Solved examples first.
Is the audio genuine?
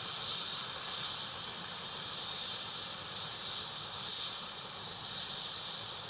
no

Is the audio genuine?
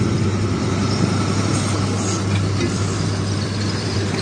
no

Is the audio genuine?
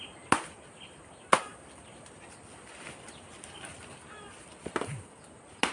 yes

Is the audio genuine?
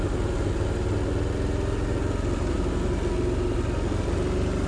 yes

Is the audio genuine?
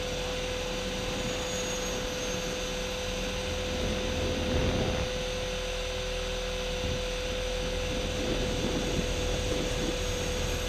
yes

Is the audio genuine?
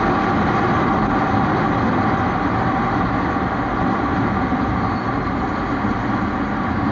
yes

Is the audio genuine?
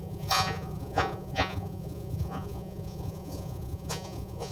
no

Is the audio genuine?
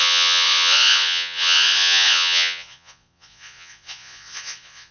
no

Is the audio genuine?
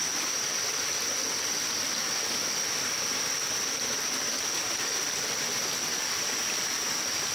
yes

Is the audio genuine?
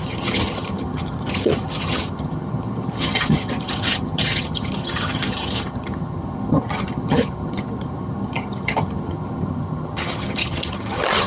no